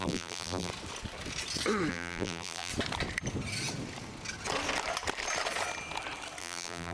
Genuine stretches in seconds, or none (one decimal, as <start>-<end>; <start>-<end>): 0.7-1.9; 2.7-6.4